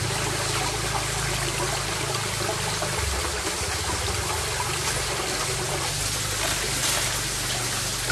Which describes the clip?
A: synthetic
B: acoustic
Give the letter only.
B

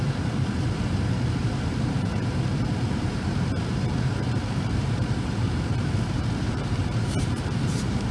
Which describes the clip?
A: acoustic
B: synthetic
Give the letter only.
B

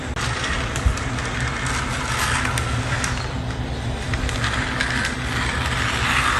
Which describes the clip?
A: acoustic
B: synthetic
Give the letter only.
A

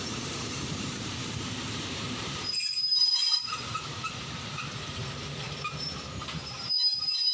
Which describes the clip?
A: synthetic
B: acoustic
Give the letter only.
A